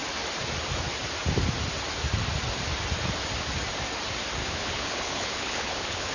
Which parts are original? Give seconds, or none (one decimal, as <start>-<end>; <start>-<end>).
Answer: 0.0-4.4